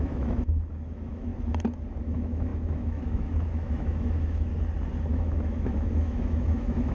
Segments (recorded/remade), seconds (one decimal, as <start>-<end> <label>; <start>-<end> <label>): 0.0-1.3 remade; 1.3-2.0 recorded; 2.0-4.5 remade; 4.5-5.1 recorded; 5.1-6.9 remade